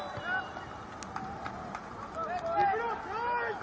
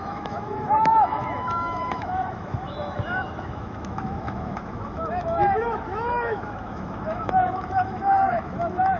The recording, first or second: first